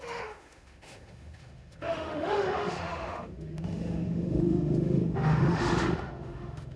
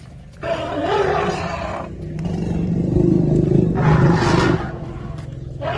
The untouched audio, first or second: second